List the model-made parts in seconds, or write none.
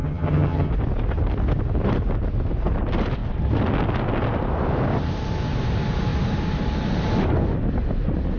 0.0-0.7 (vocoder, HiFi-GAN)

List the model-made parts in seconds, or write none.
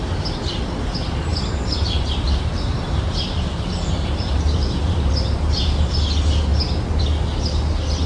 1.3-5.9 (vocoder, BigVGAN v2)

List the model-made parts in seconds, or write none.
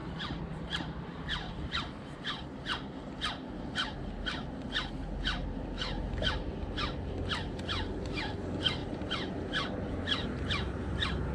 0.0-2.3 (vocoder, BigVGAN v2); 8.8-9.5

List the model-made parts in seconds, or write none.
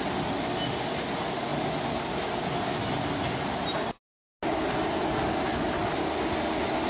none